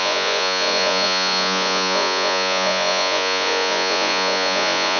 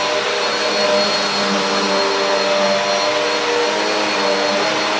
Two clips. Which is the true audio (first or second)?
second